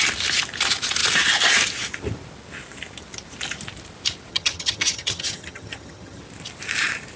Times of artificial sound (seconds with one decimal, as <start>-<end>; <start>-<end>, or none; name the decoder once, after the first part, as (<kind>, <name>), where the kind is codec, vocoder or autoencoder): 4.3-6.2 (vocoder, HiFi-GAN)